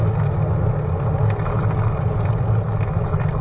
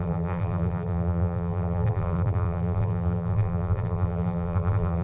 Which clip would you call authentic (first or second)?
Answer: first